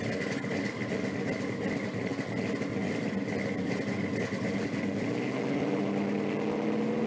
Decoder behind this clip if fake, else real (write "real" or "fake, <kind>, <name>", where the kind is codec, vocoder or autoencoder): real